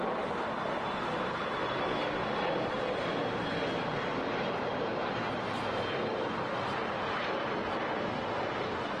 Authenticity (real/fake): real